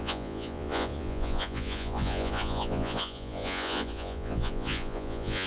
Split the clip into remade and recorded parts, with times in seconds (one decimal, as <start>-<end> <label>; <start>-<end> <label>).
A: 0.0-5.5 remade